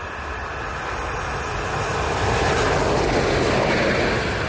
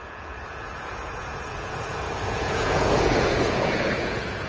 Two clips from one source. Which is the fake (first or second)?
second